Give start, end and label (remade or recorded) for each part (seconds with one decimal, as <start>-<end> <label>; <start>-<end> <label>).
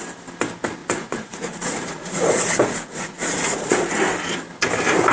0.0-0.8 recorded; 0.8-3.9 remade; 3.9-5.1 recorded